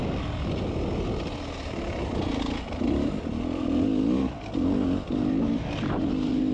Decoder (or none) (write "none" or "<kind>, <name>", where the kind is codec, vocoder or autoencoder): none